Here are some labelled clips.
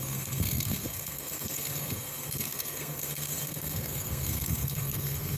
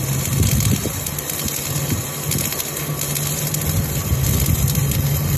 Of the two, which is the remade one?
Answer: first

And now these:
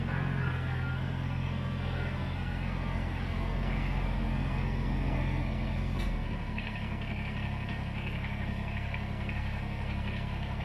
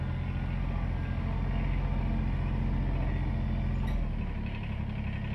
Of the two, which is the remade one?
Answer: first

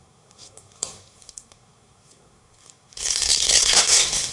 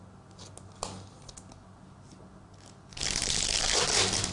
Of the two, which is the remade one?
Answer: first